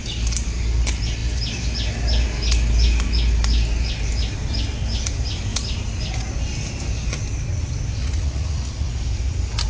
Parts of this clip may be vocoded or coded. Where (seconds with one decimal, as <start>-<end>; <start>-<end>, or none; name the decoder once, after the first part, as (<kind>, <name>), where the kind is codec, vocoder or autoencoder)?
8.0-8.9 (vocoder, Vocos)